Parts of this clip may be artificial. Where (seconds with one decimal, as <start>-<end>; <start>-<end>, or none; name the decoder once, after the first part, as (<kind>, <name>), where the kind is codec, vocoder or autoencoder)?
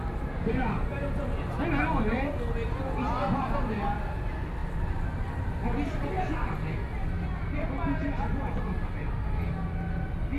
none